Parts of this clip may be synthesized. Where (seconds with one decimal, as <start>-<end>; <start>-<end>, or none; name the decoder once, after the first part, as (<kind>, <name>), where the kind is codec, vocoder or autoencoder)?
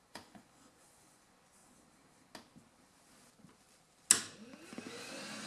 0.0-1.6 (vocoder, Vocos); 4.9-5.5